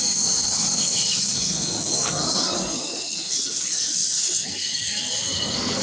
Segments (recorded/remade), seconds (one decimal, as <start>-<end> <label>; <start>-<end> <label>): 0.0-5.8 remade